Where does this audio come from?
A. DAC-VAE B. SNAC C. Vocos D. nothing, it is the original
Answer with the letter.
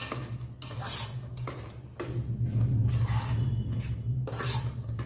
D